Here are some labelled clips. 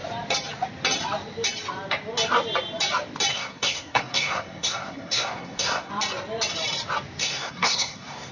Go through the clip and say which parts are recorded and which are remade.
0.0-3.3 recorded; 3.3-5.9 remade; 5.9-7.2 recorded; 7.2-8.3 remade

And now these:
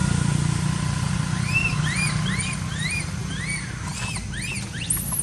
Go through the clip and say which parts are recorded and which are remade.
0.0-1.8 remade; 1.8-5.2 recorded

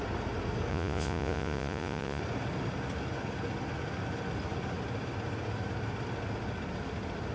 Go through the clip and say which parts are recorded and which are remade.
0.0-0.7 recorded; 0.7-2.2 remade; 2.2-7.3 recorded